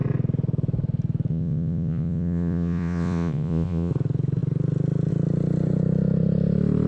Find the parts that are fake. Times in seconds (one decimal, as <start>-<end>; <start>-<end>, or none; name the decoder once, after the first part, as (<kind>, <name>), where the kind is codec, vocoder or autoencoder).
1.3-3.9 (vocoder, Vocos)